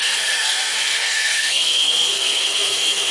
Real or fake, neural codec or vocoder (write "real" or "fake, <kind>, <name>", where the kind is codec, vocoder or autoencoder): fake, codec, SNAC